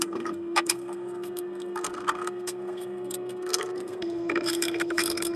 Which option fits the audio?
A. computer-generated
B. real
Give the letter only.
A